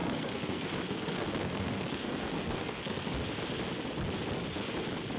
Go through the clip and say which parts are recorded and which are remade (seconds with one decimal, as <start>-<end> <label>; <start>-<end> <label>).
0.0-3.1 remade; 3.1-5.2 recorded